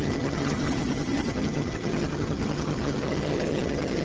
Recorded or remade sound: remade